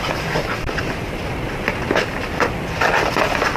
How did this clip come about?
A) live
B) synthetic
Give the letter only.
A